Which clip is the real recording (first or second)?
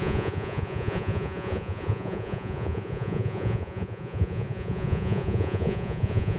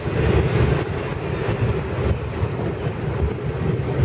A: second